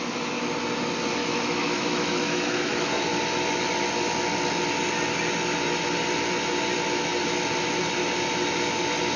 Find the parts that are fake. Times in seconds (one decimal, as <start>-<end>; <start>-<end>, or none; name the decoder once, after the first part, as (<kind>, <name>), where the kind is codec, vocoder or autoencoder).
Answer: 1.2-3.2 (autoencoder, DAC-VAE)